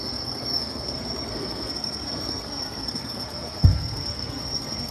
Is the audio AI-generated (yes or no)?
yes